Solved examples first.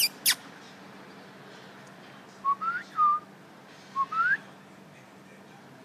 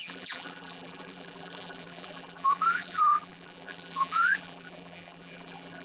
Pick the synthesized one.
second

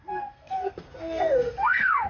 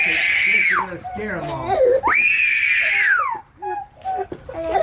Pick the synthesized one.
first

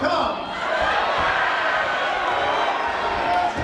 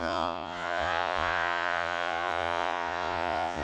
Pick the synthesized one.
second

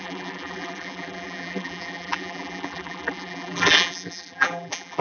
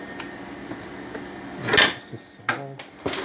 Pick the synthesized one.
first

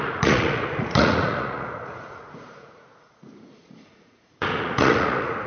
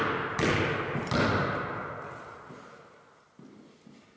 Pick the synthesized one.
first